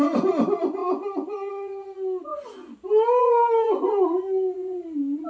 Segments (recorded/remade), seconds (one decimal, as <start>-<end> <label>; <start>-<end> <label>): 0.0-2.3 remade; 2.3-3.2 recorded; 3.2-5.3 remade